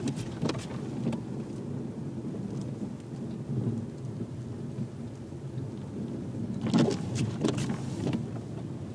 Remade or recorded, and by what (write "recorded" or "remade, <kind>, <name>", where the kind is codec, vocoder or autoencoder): recorded